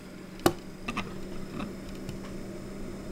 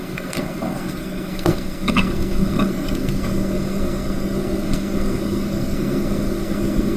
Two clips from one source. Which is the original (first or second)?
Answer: first